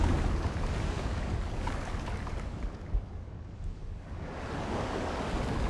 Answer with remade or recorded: remade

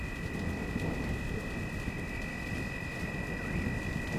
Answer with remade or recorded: recorded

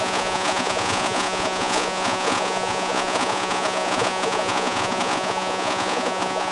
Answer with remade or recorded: remade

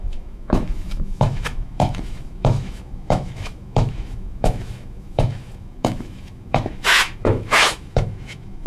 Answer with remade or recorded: remade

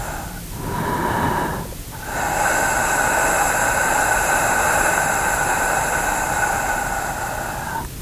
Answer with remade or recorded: recorded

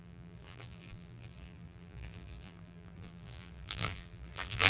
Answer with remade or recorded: remade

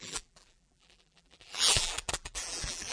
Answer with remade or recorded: remade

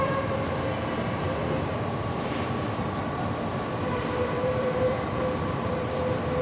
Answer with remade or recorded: remade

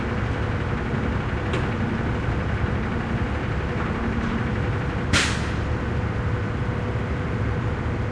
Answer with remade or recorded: recorded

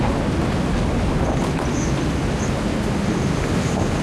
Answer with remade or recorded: recorded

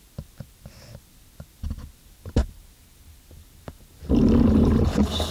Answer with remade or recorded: recorded